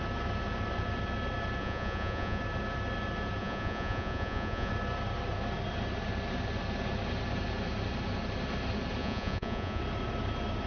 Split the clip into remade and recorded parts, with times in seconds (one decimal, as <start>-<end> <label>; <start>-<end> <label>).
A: 0.0-1.6 recorded; 1.6-2.4 remade; 2.4-3.4 recorded; 3.4-4.7 remade; 4.7-9.0 recorded; 9.0-9.8 remade; 9.8-10.7 recorded